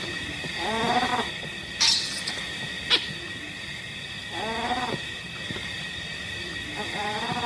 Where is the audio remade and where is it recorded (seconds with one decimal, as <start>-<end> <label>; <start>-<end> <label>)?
0.0-1.1 remade; 1.1-4.8 recorded; 4.8-6.5 remade; 6.5-7.0 recorded; 7.0-7.5 remade